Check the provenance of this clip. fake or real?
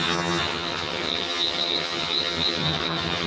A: fake